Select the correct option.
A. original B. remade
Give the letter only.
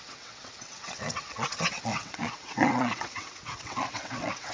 B